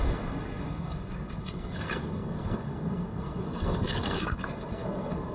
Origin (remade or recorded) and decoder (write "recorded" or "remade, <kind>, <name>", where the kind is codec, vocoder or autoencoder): remade, codec, SNAC